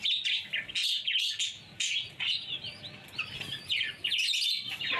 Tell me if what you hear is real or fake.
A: real